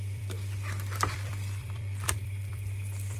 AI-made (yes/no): yes